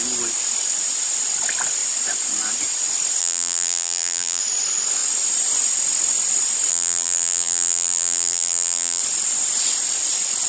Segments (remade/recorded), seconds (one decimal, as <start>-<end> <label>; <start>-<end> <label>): 0.0-3.2 recorded; 3.2-4.4 remade; 4.4-6.7 recorded; 6.7-9.0 remade; 9.0-10.5 recorded